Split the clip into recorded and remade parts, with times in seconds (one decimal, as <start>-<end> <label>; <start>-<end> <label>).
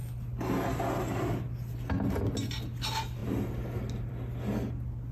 0.0-5.1 recorded